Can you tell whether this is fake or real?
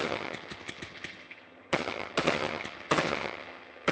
fake